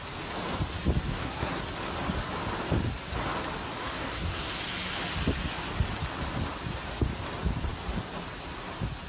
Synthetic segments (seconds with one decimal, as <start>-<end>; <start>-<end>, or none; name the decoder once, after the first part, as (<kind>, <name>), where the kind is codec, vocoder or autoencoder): 1.1-1.6 (codec, SNAC); 3.8-4.6